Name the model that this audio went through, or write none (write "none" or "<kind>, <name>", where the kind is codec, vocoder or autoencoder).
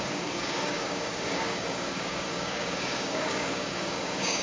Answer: codec, DAC